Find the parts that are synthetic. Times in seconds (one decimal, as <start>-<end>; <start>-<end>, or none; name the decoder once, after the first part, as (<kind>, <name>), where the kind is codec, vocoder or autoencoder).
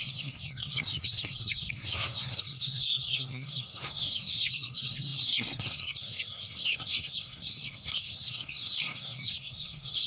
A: 0.0-10.1 (codec, SNAC)